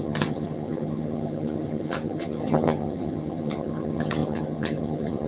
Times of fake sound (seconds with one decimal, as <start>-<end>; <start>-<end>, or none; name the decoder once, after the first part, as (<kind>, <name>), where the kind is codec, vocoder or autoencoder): 0.0-5.3 (vocoder, HiFi-GAN)